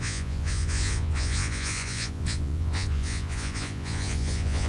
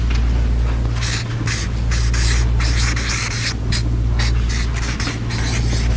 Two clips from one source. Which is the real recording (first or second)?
second